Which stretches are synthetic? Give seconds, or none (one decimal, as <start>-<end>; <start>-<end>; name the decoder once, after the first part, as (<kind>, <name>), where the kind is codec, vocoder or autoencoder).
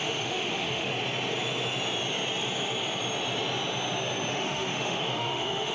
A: 0.0-0.9 (autoencoder, DAC-VAE); 4.3-5.7